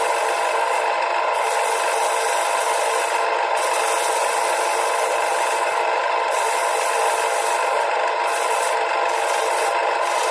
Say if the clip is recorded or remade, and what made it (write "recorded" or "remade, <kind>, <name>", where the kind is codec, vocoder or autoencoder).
recorded